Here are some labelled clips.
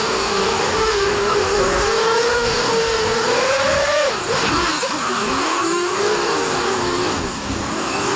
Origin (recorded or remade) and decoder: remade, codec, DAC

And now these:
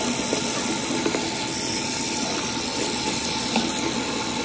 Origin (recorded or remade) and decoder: recorded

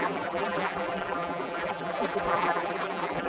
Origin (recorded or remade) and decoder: remade, vocoder, BigVGAN v2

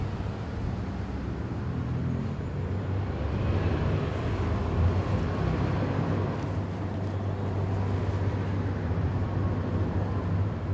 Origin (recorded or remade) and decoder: recorded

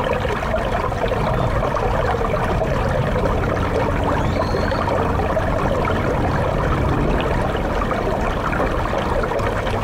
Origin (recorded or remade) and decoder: recorded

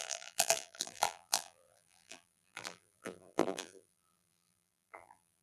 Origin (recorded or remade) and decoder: remade, vocoder, BigVGAN v2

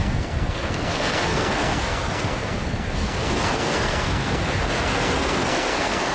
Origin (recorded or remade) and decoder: remade, codec, SNAC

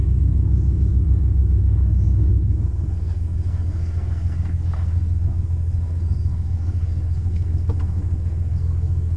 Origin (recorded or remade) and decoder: remade, codec, SNAC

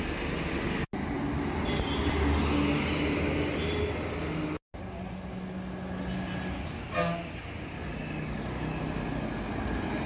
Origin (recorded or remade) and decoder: recorded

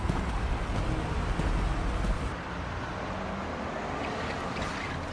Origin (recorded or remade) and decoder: recorded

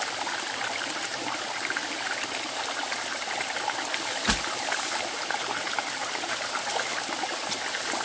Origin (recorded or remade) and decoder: recorded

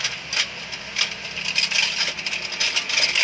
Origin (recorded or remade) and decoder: recorded